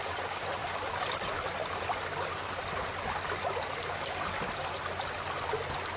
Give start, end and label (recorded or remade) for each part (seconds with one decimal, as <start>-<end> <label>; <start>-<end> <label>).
0.0-6.0 recorded